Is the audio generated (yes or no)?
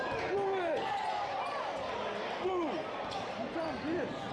no